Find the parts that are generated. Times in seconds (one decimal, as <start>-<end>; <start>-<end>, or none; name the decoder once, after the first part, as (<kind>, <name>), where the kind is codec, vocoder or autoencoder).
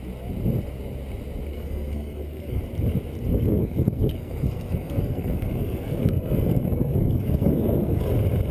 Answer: 1.5-2.6 (codec, SNAC); 3.3-8.0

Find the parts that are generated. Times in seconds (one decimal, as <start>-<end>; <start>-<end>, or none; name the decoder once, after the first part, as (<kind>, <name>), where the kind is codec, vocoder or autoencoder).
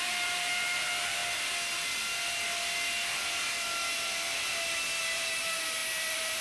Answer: 0.0-1.2 (vocoder, BigVGAN v2); 5.0-6.4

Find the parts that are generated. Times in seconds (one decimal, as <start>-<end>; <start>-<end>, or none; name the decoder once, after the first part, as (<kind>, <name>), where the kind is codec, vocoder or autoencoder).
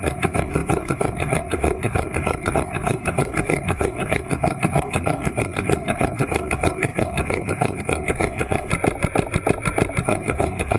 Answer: 0.0-8.7 (codec, SNAC); 10.0-10.8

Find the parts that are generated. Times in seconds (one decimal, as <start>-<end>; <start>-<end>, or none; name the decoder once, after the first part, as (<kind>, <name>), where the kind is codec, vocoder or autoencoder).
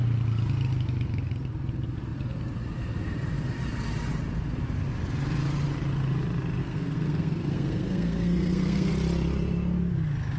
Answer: 6.6-8.9 (codec, SNAC)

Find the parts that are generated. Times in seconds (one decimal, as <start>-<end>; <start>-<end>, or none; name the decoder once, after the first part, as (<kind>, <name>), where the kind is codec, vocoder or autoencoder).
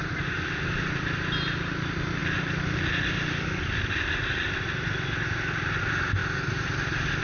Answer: none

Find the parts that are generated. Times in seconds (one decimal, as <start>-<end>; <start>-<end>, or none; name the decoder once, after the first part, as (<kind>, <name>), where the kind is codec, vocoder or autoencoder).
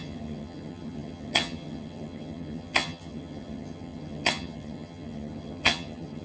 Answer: 0.0-6.2 (vocoder, HiFi-GAN)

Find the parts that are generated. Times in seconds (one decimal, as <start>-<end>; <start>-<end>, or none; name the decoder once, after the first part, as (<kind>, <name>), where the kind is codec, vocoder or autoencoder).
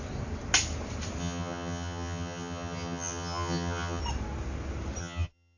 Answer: 1.2-4.0 (vocoder, HiFi-GAN); 5.0-5.6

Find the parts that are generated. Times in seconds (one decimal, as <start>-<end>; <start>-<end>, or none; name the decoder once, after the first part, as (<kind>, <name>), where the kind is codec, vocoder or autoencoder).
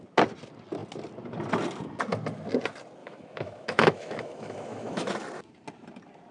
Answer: 3.0-5.1 (autoencoder, DAC-VAE)